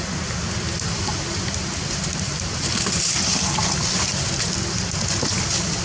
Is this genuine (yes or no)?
yes